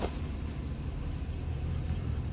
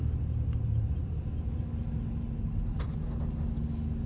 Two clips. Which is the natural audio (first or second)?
second